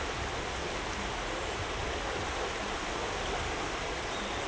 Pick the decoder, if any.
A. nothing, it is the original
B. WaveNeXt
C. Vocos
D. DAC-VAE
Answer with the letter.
A